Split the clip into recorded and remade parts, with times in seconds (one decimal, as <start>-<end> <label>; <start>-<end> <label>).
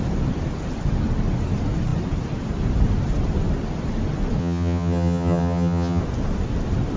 0.0-4.4 recorded; 4.4-6.0 remade; 6.0-7.0 recorded